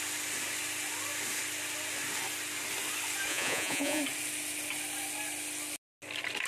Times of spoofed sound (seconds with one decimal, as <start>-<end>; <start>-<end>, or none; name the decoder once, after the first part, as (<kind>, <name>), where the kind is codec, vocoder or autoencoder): 3.3-4.0 (vocoder, Vocos)